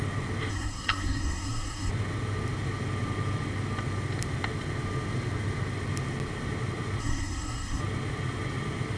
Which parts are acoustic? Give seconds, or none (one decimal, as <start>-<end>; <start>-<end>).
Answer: 0.0-0.5; 1.9-7.0; 7.8-9.0